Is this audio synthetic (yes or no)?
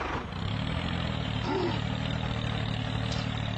no